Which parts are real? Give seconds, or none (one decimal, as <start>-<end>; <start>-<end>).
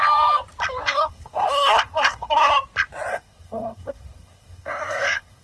0.0-0.8; 2.5-3.1